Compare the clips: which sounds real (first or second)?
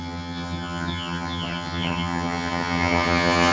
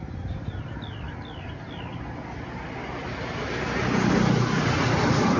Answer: second